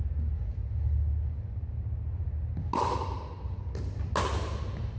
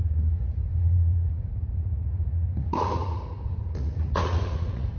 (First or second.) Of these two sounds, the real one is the first